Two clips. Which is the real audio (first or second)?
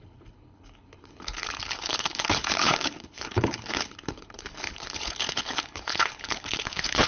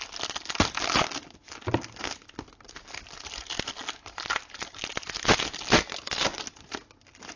second